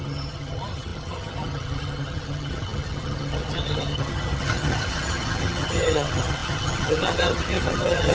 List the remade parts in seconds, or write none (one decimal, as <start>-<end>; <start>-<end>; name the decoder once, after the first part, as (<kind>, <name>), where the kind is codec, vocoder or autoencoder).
0.0-8.1 (vocoder, HiFi-GAN)